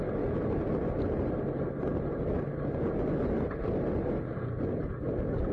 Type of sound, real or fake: real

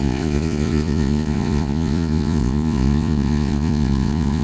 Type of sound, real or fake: fake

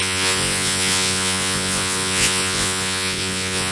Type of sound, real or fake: fake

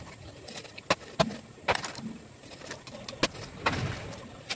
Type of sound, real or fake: real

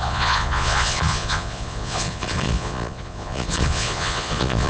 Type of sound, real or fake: fake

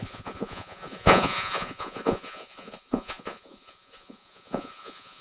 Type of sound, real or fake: fake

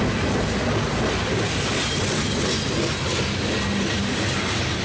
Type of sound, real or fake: real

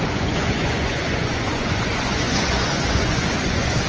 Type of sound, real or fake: fake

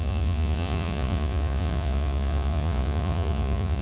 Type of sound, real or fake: fake